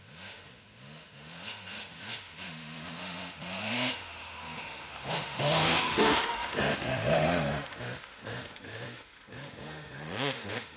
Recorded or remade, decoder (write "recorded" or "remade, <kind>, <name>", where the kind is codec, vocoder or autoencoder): remade, autoencoder, DAC-VAE